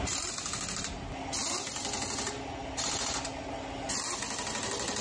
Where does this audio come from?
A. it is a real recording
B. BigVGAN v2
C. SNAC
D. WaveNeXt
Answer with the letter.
A